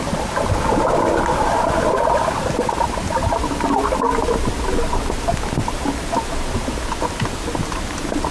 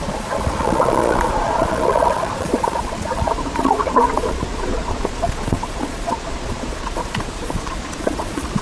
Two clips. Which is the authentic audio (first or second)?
first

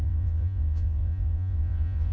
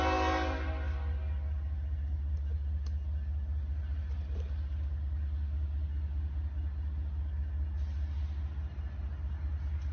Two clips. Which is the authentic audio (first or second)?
second